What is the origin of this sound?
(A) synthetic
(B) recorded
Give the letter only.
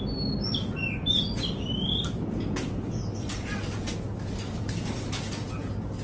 B